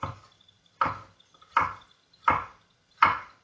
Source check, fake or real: real